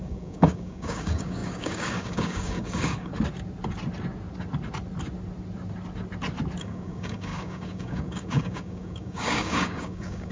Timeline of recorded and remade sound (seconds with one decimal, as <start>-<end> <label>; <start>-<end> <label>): 0.0-3.1 remade; 3.1-6.6 recorded; 6.6-10.3 remade